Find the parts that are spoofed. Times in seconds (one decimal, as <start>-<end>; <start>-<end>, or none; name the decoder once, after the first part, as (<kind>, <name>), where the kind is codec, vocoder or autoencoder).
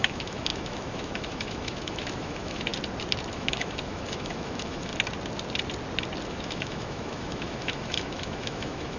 0.0-2.7 (autoencoder, DAC-VAE); 3.3-4.9; 6.3-9.0